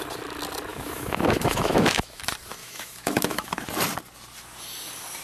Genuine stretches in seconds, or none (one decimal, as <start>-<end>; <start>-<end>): 0.0-0.7; 2.2-2.6; 3.6-5.2